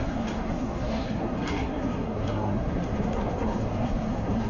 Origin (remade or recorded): remade